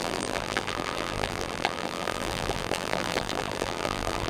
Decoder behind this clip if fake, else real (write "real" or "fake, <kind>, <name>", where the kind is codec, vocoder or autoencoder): fake, vocoder, BigVGAN v2